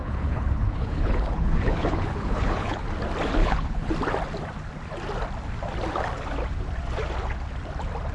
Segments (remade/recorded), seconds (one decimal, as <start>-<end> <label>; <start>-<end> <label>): 0.0-2.8 remade; 2.8-3.4 recorded; 3.4-3.9 remade; 3.9-8.1 recorded